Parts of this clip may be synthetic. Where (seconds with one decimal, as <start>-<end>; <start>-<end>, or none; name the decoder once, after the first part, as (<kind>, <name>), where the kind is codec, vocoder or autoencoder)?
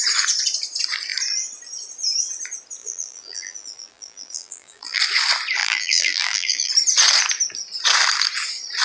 2.8-5.0 (vocoder, BigVGAN v2); 5.6-6.7